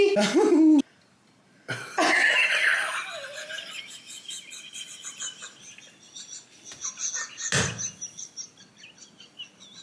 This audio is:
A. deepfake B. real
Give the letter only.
B